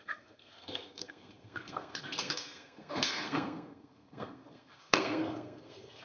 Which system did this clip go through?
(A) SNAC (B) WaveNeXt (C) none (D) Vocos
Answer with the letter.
A